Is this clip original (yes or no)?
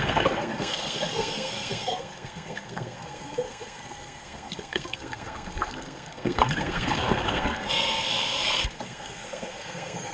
no